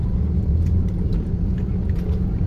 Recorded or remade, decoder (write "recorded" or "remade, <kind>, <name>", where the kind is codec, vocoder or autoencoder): remade, vocoder, BigVGAN v2